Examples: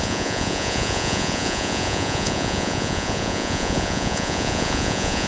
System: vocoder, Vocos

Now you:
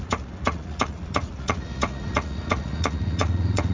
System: vocoder, Vocos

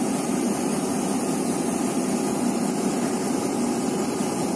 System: none